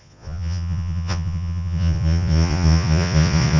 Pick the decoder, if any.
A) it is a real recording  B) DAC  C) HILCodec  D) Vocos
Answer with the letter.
D